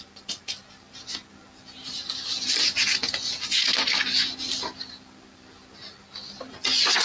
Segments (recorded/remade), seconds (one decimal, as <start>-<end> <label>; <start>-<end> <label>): 0.0-7.0 recorded